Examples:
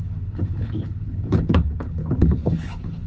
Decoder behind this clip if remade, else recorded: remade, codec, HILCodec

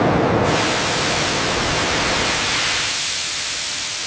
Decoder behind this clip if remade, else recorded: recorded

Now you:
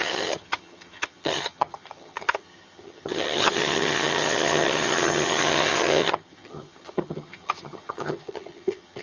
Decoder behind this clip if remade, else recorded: remade, vocoder, HiFi-GAN